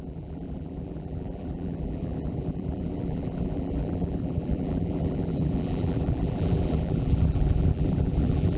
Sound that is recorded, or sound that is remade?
remade